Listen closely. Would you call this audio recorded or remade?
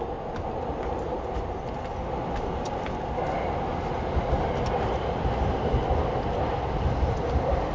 recorded